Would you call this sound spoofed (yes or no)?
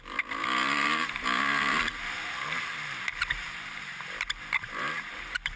yes